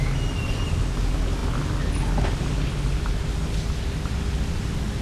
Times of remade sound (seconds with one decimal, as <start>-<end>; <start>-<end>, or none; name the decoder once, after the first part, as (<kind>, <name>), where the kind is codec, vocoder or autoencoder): none